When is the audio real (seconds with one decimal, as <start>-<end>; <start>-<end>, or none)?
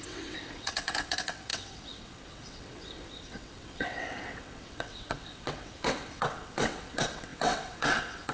none